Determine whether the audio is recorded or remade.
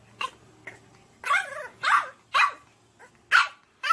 recorded